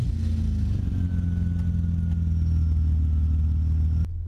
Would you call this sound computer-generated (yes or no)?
no